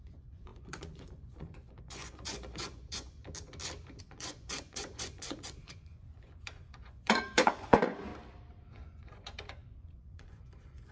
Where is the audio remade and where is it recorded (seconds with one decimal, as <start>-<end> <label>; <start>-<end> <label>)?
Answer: 0.0-3.2 remade; 3.2-4.0 recorded; 4.0-8.1 remade; 8.1-8.7 recorded; 8.7-10.9 remade